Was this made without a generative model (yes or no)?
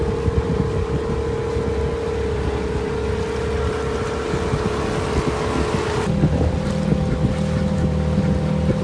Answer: yes